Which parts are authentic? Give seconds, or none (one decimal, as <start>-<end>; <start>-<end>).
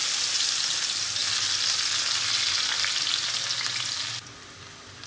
0.0-5.1